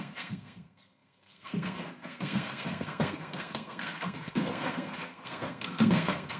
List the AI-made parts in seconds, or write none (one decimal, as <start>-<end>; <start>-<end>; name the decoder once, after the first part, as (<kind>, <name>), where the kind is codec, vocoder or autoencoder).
0.0-6.4 (codec, SNAC)